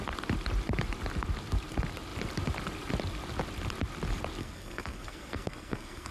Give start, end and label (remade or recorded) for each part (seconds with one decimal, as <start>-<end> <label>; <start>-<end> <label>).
0.0-4.4 recorded; 4.4-6.1 remade